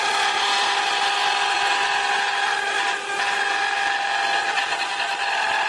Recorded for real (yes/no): yes